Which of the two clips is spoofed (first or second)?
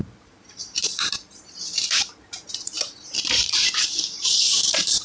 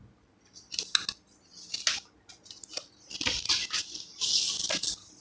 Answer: first